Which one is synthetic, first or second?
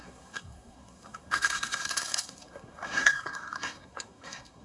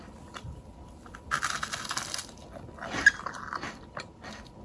first